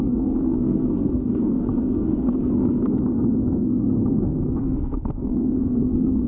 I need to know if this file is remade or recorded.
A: remade